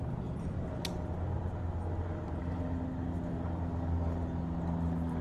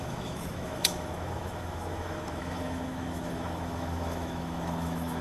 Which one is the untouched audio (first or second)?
first